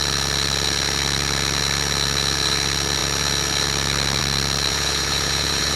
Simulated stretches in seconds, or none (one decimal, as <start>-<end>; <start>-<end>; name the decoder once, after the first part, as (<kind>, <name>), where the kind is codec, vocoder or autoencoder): 4.7-5.8 (vocoder, Vocos)